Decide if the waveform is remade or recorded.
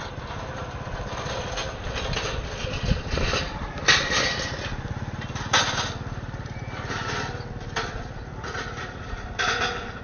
recorded